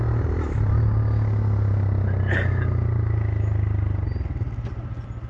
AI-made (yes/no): no